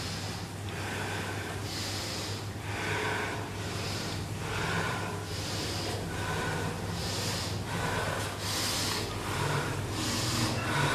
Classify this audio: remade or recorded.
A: recorded